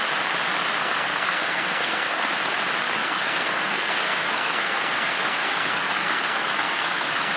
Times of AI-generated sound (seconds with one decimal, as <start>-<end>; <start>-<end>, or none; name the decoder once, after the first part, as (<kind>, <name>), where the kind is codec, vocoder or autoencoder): 0.8-2.3 (codec, SNAC); 3.0-7.4